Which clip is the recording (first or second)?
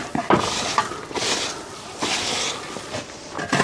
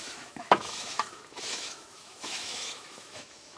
first